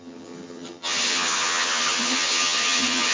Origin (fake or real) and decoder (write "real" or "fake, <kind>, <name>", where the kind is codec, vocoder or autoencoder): fake, vocoder, HiFi-GAN